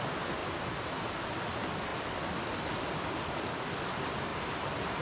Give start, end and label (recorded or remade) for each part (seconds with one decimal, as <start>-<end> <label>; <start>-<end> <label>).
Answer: 0.0-0.4 recorded; 0.4-1.4 remade; 1.4-4.3 recorded; 4.3-5.0 remade

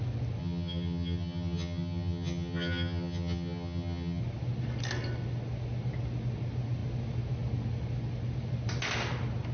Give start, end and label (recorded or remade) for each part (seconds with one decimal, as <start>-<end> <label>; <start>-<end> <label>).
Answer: 0.0-0.4 recorded; 0.4-4.2 remade; 4.2-9.5 recorded

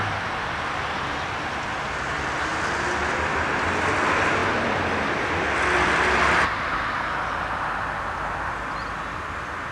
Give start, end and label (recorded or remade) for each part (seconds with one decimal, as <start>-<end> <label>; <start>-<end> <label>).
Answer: 0.0-9.7 recorded

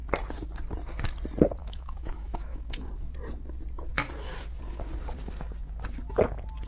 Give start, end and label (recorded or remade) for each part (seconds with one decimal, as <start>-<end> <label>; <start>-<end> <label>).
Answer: 0.0-1.6 recorded; 1.6-2.9 remade; 2.9-6.7 recorded

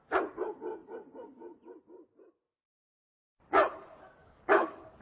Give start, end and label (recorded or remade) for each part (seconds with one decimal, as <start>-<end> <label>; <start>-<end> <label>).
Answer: 0.0-4.2 recorded; 4.2-5.0 remade

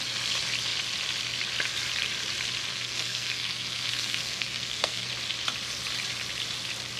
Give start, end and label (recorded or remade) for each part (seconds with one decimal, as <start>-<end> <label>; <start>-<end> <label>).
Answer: 0.0-2.7 recorded; 2.7-5.1 remade; 5.1-7.0 recorded

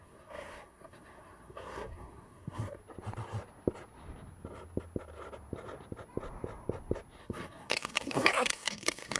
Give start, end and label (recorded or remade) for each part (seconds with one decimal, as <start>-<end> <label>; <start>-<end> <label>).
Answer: 0.0-2.8 remade; 2.8-7.2 recorded; 7.2-9.2 remade